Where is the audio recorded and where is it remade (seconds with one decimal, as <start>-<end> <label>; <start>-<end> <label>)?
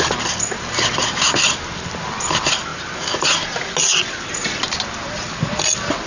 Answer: 0.0-6.1 recorded